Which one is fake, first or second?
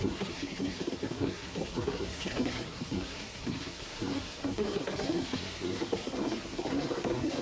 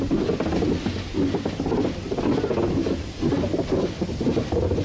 first